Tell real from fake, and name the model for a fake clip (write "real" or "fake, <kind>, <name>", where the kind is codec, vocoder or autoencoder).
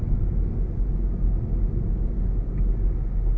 real